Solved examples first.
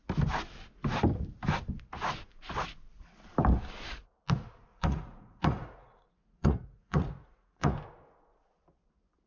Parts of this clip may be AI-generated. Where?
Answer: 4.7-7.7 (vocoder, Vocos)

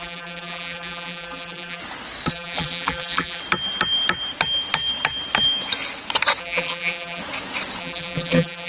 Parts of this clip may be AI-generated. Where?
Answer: 0.0-1.8 (vocoder, BigVGAN v2); 2.3-3.4; 6.4-7.2; 7.8-8.7

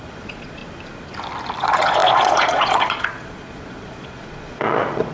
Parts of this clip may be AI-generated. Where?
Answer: 0.0-0.6 (vocoder, Vocos); 1.6-5.1

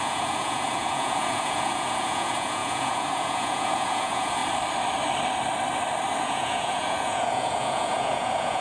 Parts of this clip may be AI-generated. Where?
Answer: 0.0-4.4 (vocoder, Vocos); 6.2-8.6

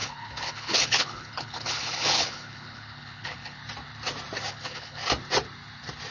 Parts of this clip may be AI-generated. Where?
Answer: 0.0-3.6 (codec, HILCodec); 4.5-5.0

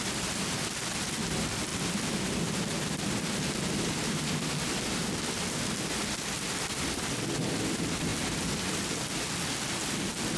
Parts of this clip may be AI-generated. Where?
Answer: none

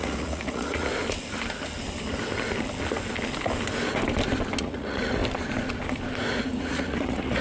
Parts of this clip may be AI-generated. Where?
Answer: 0.0-0.9 (vocoder, Vocos); 4.6-5.2; 6.4-7.4

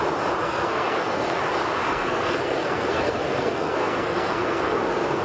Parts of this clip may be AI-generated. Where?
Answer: 0.4-1.4 (codec, SNAC); 1.9-5.2